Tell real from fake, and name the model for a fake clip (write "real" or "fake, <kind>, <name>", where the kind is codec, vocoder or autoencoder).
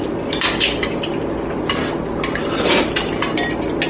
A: real